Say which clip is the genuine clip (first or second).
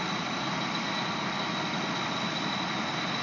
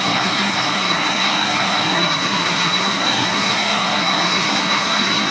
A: first